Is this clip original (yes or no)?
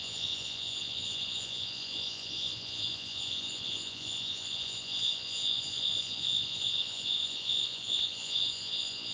no